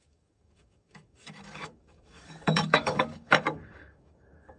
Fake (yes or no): yes